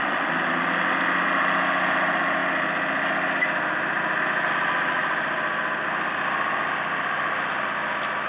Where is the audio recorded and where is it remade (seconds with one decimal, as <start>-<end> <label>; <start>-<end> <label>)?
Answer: 0.0-8.3 recorded